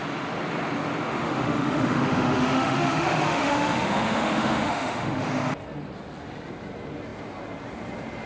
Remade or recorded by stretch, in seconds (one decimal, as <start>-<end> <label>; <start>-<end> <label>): 0.0-1.1 recorded; 1.1-5.3 remade; 5.3-8.3 recorded